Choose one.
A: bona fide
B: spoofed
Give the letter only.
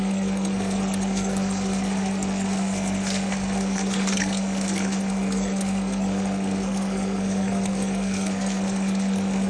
B